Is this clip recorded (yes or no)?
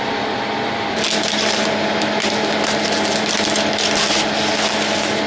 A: yes